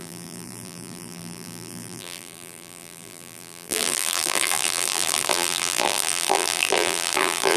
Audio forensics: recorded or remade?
remade